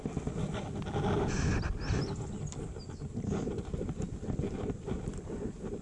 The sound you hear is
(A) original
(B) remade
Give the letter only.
A